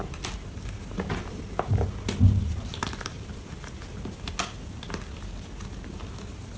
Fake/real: real